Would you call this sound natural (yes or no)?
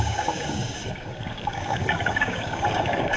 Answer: no